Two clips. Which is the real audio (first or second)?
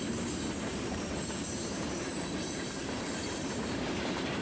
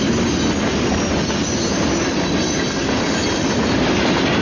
second